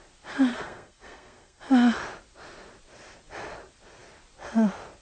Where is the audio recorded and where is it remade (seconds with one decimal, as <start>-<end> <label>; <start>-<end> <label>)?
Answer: 0.0-0.5 recorded; 0.5-1.6 remade; 1.6-5.0 recorded